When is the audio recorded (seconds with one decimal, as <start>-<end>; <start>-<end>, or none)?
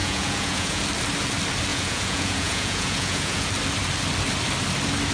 0.8-1.7; 3.5-5.1